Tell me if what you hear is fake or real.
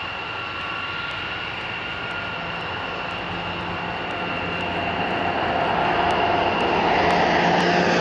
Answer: real